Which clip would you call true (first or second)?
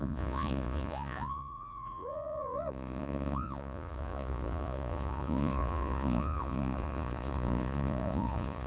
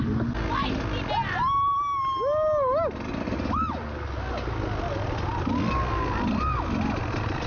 second